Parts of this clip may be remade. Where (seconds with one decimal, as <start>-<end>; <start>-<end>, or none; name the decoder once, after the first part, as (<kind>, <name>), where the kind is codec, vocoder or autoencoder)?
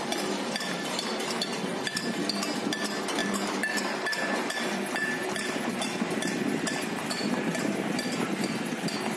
0.0-1.7 (vocoder, BigVGAN v2); 2.6-9.2